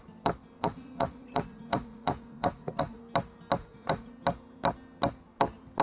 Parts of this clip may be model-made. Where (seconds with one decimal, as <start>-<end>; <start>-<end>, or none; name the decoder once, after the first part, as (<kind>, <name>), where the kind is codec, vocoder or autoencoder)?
0.6-3.0 (vocoder, Vocos); 3.6-4.1